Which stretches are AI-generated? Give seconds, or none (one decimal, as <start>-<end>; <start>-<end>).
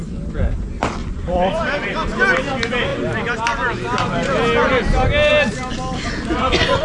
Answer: 1.0-1.6